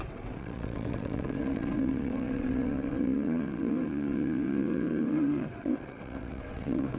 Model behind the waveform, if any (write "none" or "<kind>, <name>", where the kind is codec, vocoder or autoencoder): vocoder, WaveNeXt